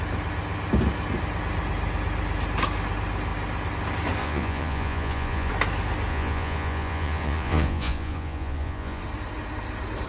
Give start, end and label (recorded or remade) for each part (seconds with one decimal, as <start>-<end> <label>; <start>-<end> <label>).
0.0-4.2 recorded; 4.2-5.5 remade; 5.5-6.1 recorded; 6.1-9.0 remade; 9.0-10.1 recorded